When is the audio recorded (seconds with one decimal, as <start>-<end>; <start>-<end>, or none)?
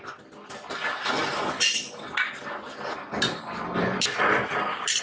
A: 0.0-5.0